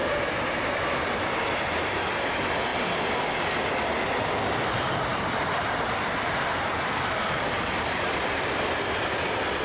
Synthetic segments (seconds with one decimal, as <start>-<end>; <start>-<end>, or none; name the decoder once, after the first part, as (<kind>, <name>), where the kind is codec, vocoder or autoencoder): 0.0-0.9 (vocoder, BigVGAN v2); 5.1-8.8